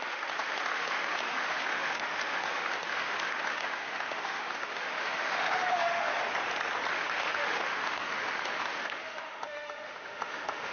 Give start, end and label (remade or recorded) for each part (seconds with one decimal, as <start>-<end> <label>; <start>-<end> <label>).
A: 0.0-6.1 remade; 6.1-6.9 recorded; 6.9-10.7 remade

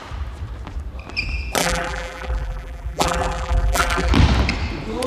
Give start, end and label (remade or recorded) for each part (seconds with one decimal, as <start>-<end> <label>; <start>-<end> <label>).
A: 0.0-1.6 recorded; 1.6-4.1 remade; 4.1-5.1 recorded

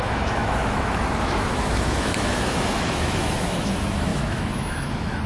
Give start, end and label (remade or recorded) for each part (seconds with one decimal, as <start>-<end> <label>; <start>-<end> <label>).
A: 0.0-5.3 remade

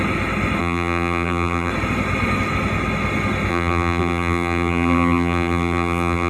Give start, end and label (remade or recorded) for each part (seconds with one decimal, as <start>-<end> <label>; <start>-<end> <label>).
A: 0.0-0.6 recorded; 0.6-1.7 remade; 1.7-3.5 recorded; 3.5-6.3 remade